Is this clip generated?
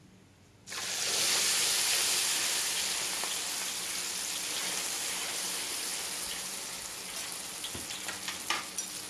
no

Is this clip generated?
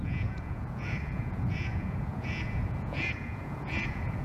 yes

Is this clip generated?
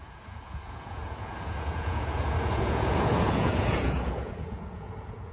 yes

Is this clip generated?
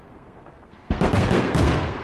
yes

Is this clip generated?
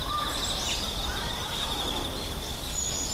no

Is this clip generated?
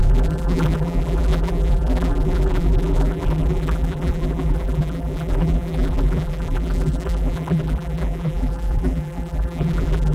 yes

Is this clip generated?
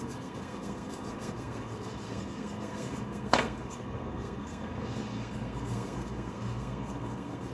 yes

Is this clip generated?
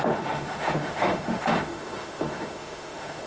yes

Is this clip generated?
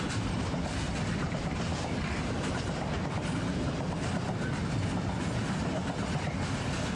no